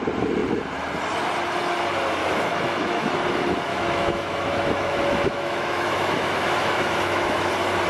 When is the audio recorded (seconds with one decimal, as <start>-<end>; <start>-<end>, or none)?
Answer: 0.0-2.2; 3.1-3.7; 7.5-7.9